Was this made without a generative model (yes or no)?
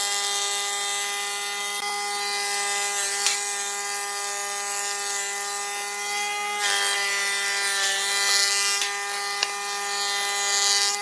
yes